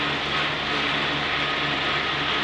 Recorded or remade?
recorded